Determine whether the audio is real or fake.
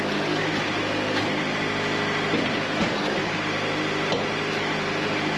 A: real